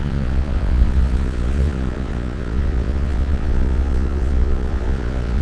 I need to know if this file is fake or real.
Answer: fake